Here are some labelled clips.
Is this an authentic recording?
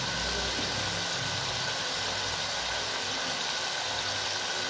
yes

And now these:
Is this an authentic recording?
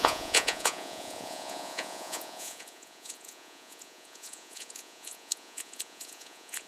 no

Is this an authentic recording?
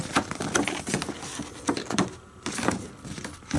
yes